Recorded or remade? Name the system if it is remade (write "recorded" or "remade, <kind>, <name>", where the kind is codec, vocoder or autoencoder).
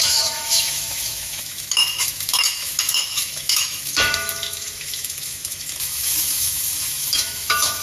remade, autoencoder, DAC-VAE